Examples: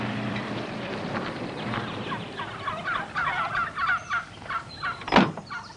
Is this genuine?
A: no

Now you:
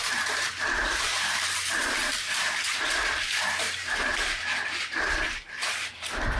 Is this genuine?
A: no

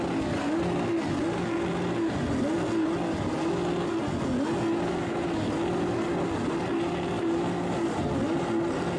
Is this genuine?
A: yes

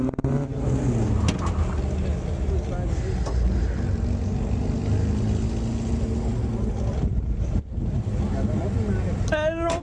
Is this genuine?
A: yes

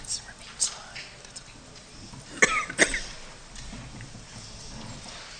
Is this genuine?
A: yes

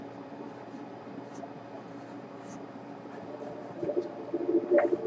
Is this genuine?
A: no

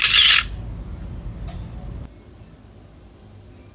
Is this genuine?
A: yes